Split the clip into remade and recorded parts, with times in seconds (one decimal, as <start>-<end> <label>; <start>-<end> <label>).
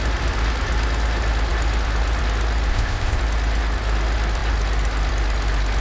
0.0-2.7 recorded; 2.7-3.2 remade; 3.2-5.8 recorded